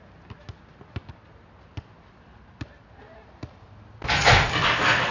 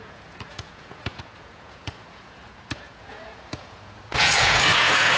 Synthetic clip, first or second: second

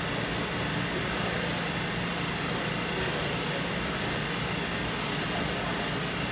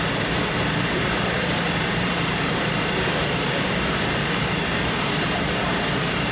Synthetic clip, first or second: second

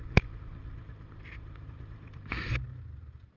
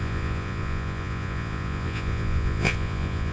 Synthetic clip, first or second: second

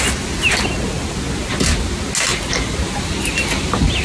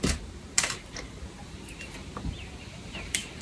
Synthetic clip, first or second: second